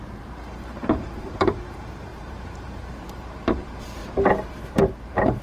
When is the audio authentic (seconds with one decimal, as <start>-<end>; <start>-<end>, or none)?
4.0-4.8